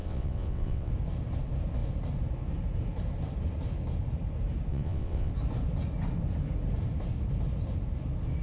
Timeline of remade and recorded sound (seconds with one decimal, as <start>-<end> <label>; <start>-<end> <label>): 0.0-0.9 remade; 0.9-4.7 recorded; 4.7-5.3 remade; 5.3-8.4 recorded